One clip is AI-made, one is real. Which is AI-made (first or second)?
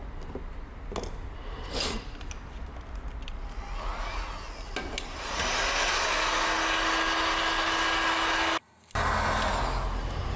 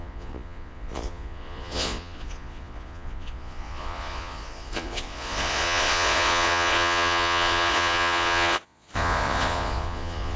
second